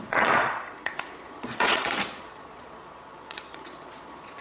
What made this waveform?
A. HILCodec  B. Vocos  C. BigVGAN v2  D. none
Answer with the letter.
B